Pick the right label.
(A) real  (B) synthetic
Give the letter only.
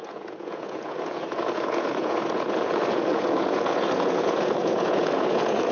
B